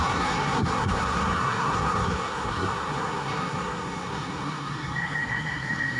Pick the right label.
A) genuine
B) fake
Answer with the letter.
B